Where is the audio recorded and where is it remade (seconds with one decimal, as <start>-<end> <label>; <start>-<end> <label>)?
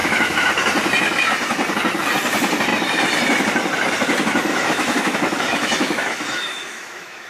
0.0-0.5 remade; 0.5-4.5 recorded; 4.5-7.3 remade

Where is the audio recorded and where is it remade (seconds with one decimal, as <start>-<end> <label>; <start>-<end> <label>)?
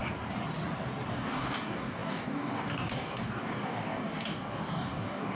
0.0-1.1 recorded; 1.1-5.4 remade